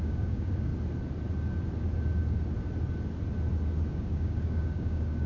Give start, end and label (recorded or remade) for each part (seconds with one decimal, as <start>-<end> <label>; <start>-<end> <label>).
0.0-0.7 remade; 0.7-3.9 recorded; 3.9-5.3 remade